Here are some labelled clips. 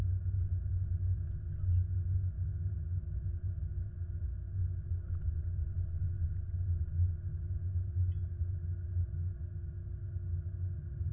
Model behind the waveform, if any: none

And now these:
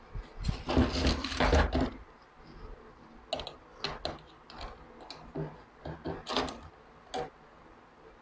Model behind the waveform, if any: none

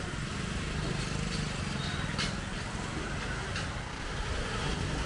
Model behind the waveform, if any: none